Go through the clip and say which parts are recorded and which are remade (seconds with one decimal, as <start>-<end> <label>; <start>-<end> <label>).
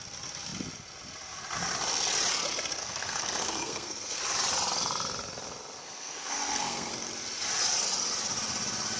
0.0-2.8 recorded; 2.8-4.2 remade; 4.2-5.8 recorded; 5.8-6.9 remade; 6.9-9.0 recorded